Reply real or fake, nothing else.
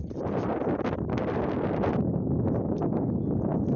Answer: real